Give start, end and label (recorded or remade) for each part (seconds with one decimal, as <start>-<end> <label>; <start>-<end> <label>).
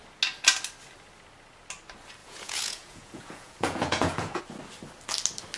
0.0-2.2 recorded; 2.2-4.4 remade; 4.4-5.6 recorded